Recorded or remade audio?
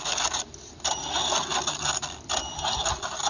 recorded